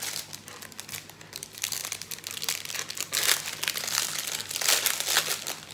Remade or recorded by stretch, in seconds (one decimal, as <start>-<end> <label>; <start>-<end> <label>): 0.0-1.8 remade; 1.8-5.2 recorded; 5.2-5.7 remade